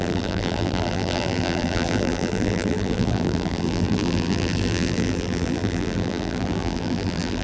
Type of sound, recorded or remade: remade